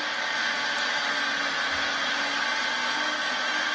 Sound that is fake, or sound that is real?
real